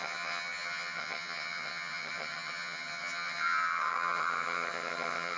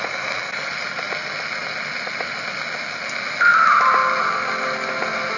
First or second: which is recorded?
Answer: second